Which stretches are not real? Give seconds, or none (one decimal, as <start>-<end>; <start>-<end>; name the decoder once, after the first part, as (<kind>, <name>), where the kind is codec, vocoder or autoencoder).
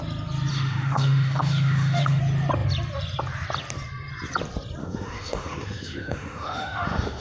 0.5-2.2 (autoencoder, DAC-VAE); 4.8-7.2